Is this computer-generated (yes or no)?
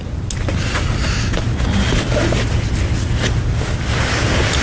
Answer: no